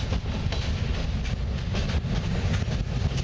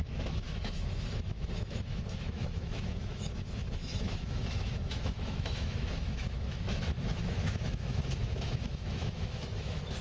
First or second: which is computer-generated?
second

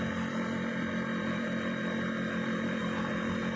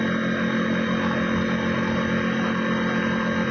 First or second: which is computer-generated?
first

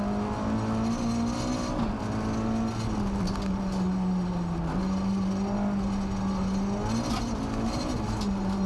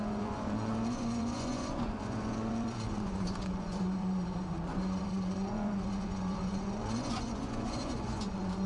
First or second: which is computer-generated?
second